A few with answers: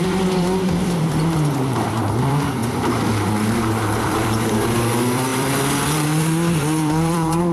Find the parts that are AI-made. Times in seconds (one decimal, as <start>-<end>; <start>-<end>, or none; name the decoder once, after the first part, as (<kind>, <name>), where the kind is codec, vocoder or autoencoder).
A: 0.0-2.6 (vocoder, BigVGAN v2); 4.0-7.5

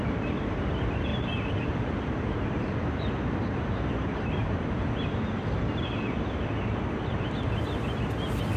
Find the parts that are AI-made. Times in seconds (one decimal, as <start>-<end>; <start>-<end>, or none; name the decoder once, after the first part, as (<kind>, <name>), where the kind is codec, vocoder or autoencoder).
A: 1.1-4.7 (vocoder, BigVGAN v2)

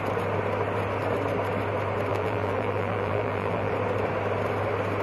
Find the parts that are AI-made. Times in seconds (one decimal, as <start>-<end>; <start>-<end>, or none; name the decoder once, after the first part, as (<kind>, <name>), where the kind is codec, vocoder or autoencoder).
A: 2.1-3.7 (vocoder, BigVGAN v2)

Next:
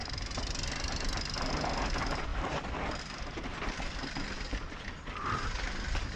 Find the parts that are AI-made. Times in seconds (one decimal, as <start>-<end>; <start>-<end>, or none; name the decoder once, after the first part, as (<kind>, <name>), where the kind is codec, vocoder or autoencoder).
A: 2.3-3.0 (vocoder, BigVGAN v2); 3.5-4.8